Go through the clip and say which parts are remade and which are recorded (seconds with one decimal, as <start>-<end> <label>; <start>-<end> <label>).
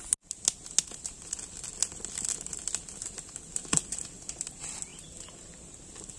0.0-6.2 recorded